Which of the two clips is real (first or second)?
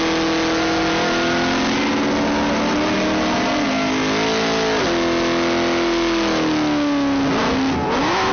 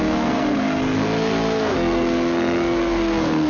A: first